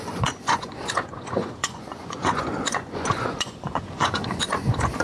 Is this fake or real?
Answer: fake